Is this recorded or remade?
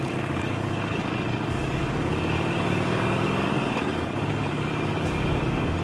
remade